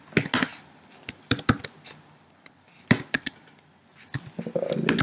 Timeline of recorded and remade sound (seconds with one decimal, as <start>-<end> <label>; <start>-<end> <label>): 0.0-0.5 recorded; 0.5-3.5 remade; 3.5-5.0 recorded